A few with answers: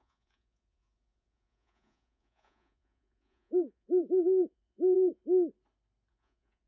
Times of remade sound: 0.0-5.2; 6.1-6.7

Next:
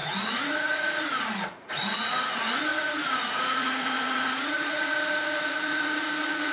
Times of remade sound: 0.0-6.5

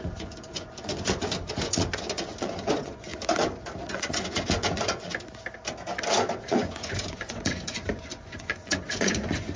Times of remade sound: 0.0-3.1; 3.9-5.1; 6.4-9.6

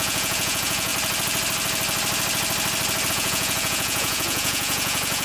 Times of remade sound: 0.0-0.9; 3.1-5.2

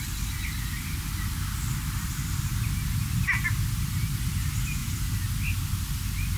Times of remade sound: none

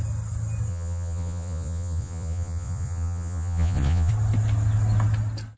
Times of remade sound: 0.7-4.1

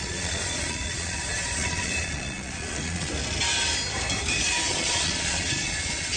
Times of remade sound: 0.0-3.1; 4.7-6.2